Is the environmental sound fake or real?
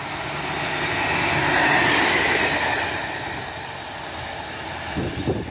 real